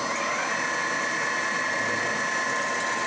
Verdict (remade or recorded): recorded